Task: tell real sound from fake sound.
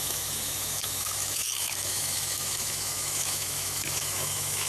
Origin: fake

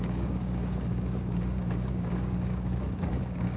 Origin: fake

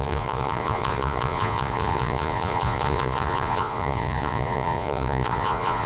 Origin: fake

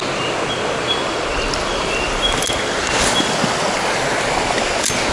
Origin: real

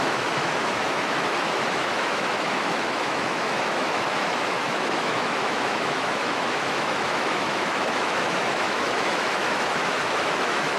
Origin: fake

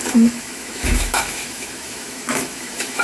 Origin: fake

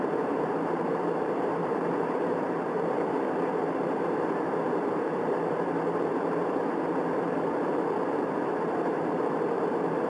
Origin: fake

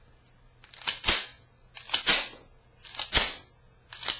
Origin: real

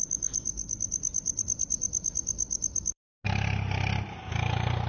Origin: real